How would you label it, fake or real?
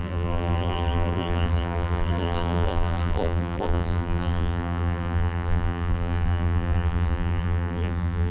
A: fake